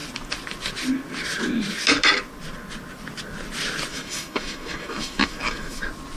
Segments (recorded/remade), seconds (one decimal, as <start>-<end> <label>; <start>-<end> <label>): 0.0-3.9 recorded; 3.9-5.8 remade; 5.8-6.2 recorded

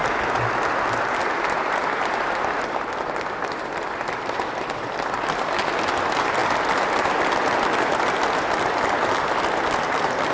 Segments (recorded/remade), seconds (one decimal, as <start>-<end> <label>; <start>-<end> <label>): 0.0-10.3 recorded

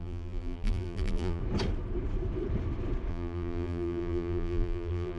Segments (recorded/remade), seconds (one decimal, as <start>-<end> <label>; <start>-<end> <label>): 0.0-1.4 remade; 1.4-3.1 recorded; 3.1-5.2 remade

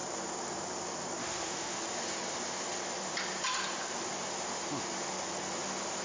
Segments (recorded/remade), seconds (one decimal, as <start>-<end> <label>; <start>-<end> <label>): 0.0-1.2 recorded; 1.2-1.8 remade; 1.8-6.0 recorded

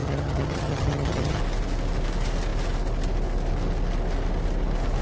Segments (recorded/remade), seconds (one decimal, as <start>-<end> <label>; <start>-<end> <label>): 0.0-1.4 remade; 1.4-5.0 recorded

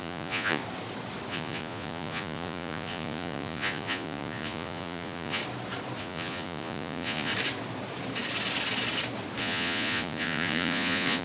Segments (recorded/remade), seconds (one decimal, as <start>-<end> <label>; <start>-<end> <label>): 0.0-0.6 remade; 0.6-1.3 recorded; 1.3-5.4 remade; 5.4-6.0 recorded; 6.0-7.3 remade; 7.3-9.4 recorded; 9.4-11.2 remade

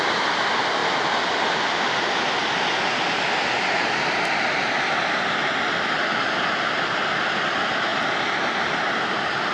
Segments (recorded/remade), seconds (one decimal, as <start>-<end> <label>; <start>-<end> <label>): 0.0-9.5 recorded